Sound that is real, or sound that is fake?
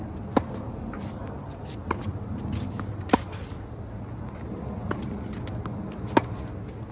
real